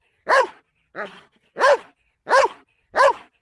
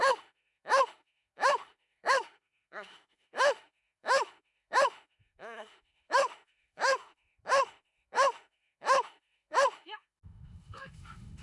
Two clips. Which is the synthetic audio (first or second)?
second